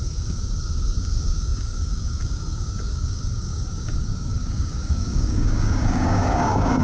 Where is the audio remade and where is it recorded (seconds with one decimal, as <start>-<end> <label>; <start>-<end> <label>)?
0.0-6.8 remade